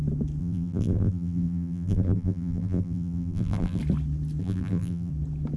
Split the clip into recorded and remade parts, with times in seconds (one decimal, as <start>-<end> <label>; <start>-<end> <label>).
0.0-0.4 recorded; 0.4-3.8 remade; 3.8-4.4 recorded; 4.4-5.1 remade; 5.1-5.6 recorded